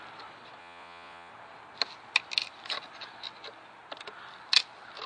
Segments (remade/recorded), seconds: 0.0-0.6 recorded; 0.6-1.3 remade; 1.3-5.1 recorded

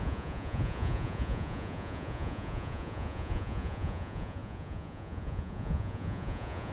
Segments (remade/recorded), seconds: 0.0-6.7 remade

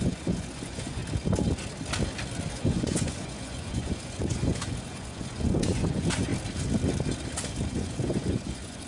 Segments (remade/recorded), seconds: 0.0-1.0 remade; 1.0-2.5 recorded; 2.5-6.3 remade; 6.3-7.7 recorded; 7.7-8.9 remade

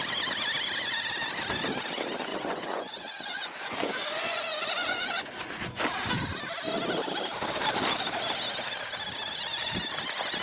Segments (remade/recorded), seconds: 0.0-2.3 recorded; 2.3-5.8 remade; 5.8-10.4 recorded

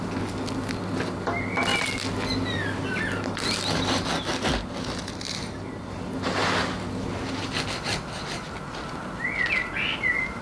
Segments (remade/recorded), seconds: 0.0-10.4 recorded

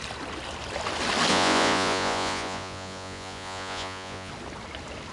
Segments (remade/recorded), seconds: 0.0-1.3 recorded; 1.3-4.3 remade; 4.3-5.1 recorded